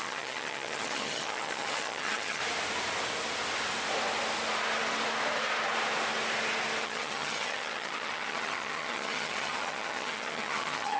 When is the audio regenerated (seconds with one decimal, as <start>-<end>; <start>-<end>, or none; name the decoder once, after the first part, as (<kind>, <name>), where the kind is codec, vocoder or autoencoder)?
0.0-2.4 (vocoder, HiFi-GAN); 6.8-11.0